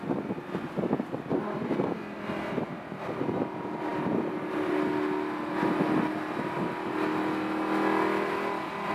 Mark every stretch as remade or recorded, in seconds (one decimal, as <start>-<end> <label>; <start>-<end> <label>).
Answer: 0.0-8.9 recorded